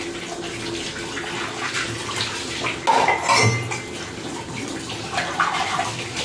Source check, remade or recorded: recorded